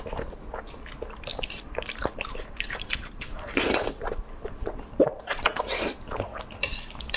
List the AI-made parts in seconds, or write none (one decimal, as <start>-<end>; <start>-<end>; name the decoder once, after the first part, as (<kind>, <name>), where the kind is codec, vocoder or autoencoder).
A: 1.3-5.6 (vocoder, BigVGAN v2)